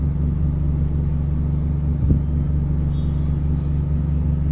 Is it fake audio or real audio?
real